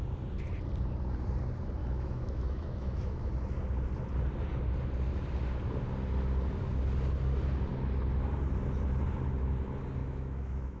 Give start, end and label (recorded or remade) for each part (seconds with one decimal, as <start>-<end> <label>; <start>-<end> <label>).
0.0-1.8 recorded; 1.8-3.3 remade; 3.3-10.0 recorded; 10.0-10.8 remade